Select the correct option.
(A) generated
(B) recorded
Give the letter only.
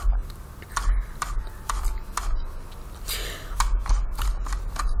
B